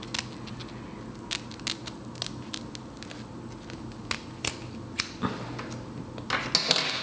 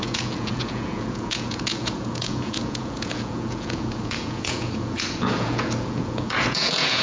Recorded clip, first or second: first